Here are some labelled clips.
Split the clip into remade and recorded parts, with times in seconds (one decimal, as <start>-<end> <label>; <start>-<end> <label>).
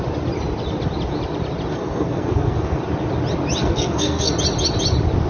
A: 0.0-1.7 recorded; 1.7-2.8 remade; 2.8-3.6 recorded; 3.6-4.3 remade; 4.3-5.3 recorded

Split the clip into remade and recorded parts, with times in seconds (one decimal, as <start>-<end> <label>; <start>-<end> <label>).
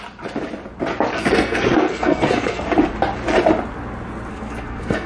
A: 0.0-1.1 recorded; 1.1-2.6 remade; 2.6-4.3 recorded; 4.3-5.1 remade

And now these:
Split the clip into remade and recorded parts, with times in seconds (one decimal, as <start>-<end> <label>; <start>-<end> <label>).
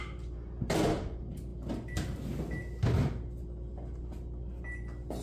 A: 0.0-5.2 recorded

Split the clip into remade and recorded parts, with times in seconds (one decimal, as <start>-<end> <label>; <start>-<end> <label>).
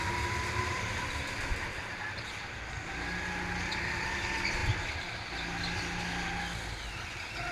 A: 0.0-7.5 recorded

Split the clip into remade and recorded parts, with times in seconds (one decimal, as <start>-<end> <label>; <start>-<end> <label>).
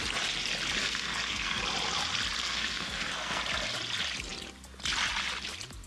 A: 0.0-0.8 recorded; 0.8-1.6 remade; 1.6-2.4 recorded; 2.4-3.4 remade; 3.4-5.9 recorded